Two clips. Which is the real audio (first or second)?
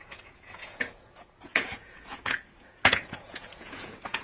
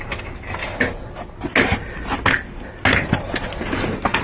second